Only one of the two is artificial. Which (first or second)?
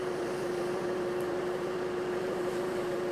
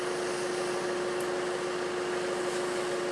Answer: first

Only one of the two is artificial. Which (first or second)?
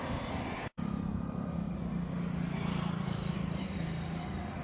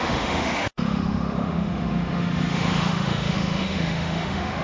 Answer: second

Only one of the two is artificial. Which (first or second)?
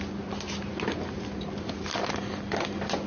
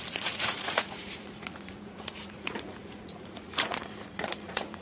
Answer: second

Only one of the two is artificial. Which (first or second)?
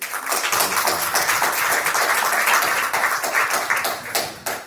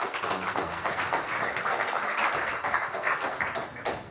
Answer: second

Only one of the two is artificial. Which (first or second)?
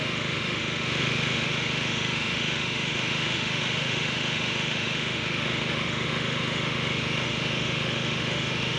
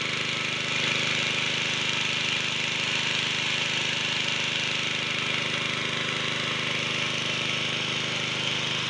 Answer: first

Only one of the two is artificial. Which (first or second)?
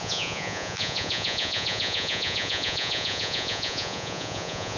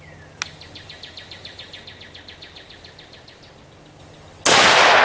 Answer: first